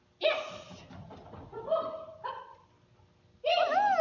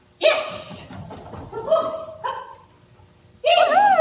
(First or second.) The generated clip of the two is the second